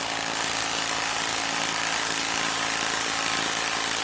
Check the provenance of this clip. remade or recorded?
recorded